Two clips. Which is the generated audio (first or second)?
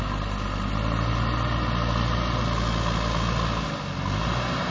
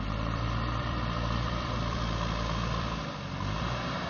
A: second